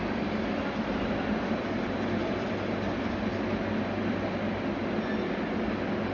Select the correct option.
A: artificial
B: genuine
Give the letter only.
B